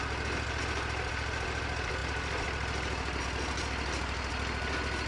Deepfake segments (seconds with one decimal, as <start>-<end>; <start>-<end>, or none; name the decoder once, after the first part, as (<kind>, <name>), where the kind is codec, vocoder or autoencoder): none